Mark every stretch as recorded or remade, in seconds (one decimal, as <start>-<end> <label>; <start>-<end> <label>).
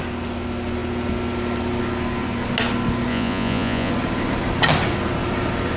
0.0-3.1 recorded; 3.1-3.9 remade; 3.9-5.8 recorded